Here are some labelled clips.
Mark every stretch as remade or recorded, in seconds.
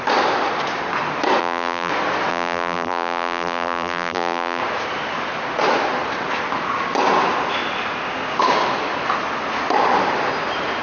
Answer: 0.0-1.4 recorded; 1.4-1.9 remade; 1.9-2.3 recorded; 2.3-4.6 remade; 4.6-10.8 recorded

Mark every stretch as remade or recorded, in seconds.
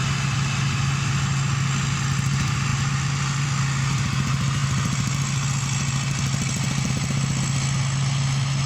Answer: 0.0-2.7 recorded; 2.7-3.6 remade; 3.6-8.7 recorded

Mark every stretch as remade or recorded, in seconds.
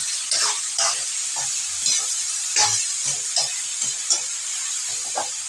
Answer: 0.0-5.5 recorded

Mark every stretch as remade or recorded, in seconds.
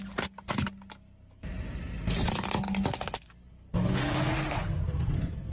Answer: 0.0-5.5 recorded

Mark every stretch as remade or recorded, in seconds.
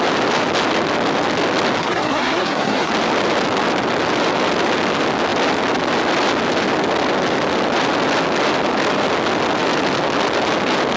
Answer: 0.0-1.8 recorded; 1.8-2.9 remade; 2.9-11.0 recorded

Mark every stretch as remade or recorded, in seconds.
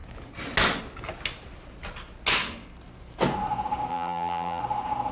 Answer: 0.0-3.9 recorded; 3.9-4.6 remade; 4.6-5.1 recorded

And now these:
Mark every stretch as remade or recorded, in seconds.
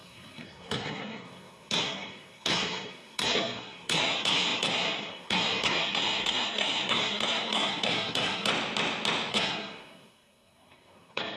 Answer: 0.0-8.5 remade; 8.5-9.3 recorded; 9.3-11.4 remade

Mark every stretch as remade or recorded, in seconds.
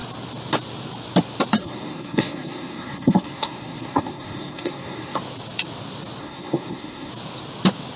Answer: 0.0-1.6 recorded; 1.6-5.2 remade; 5.2-6.2 recorded; 6.2-7.1 remade; 7.1-8.0 recorded